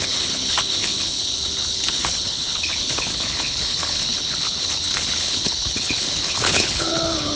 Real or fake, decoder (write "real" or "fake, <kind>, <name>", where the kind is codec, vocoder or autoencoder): fake, codec, HILCodec